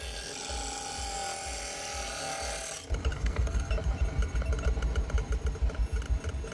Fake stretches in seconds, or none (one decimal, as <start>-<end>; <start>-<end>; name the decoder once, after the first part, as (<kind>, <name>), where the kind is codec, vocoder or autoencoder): 3.1-3.7 (codec, SNAC)